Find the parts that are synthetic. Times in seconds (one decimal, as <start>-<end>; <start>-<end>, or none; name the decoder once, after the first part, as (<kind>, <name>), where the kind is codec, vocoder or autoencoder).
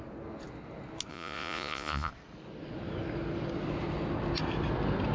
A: 1.1-2.1 (vocoder, Vocos)